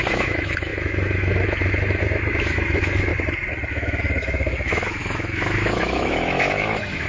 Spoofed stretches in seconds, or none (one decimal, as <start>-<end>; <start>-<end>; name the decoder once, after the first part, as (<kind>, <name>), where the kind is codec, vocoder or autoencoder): 0.0-3.1 (autoencoder, DAC-VAE); 3.7-7.1